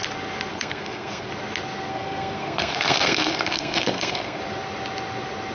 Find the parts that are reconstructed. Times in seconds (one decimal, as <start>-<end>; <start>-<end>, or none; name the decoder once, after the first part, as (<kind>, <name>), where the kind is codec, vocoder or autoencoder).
0.5-1.3 (codec, SNAC); 1.9-4.4